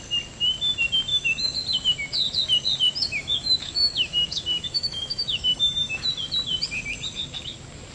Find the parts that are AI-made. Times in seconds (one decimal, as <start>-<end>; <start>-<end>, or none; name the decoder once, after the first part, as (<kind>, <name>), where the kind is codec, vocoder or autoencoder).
1.1-1.6 (autoencoder, DAC-VAE); 3.0-6.1